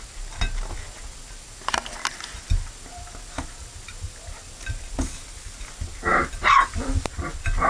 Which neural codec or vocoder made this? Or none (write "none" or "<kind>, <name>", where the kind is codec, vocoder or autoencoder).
none